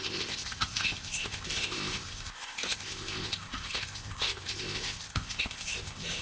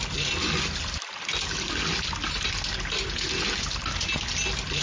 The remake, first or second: first